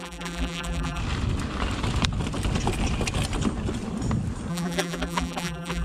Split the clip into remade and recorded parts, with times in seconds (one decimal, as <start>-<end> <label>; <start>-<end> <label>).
0.0-1.0 remade; 1.0-4.5 recorded; 4.5-5.8 remade